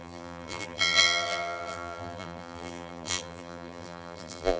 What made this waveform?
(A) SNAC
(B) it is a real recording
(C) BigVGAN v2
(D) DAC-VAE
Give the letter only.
C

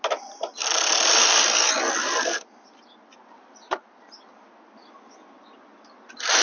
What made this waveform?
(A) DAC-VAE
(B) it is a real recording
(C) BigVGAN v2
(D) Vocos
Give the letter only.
B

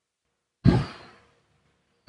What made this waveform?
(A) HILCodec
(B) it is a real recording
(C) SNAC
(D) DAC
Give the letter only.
B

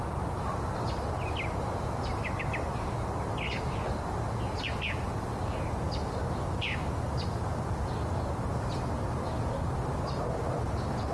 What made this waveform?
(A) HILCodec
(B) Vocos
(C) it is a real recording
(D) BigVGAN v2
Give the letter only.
C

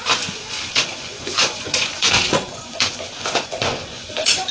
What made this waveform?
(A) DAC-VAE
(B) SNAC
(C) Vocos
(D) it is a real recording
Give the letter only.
C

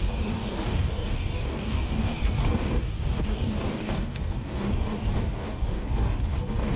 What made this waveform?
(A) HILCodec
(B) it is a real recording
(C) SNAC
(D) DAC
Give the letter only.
D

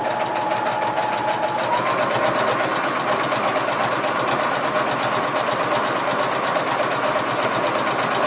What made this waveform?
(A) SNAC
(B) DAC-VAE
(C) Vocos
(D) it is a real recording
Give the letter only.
D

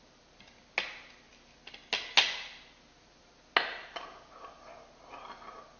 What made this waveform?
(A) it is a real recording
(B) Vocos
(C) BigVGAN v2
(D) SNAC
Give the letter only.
A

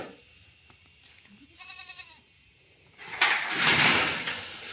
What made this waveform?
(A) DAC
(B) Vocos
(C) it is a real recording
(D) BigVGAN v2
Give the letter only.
D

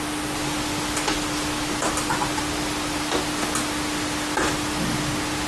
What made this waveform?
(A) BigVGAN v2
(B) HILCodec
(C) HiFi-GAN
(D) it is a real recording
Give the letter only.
D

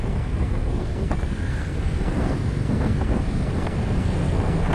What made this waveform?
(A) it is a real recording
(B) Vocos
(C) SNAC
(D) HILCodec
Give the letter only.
C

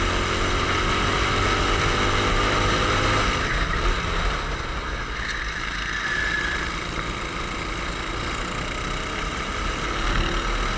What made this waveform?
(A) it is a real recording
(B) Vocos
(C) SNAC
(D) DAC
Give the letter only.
A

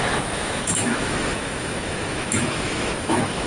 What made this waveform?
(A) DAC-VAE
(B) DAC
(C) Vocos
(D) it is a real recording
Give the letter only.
A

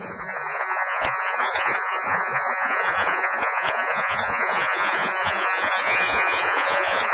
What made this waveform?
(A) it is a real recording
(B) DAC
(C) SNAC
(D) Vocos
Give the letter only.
D